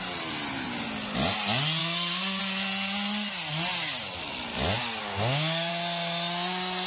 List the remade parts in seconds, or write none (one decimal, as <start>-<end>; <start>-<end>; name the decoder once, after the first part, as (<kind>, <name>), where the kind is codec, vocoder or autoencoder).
1.8-2.4 (codec, DAC); 5.0-5.7